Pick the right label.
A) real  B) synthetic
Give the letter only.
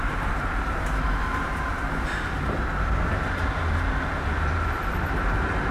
B